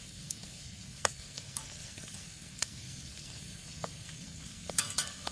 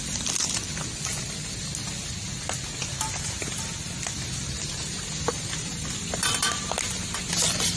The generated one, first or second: first